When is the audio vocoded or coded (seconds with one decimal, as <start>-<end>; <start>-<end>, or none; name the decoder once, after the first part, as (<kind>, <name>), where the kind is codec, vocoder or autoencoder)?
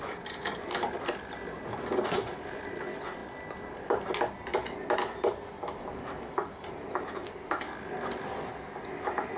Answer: none